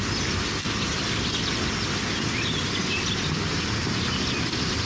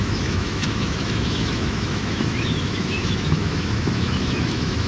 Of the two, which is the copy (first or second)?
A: second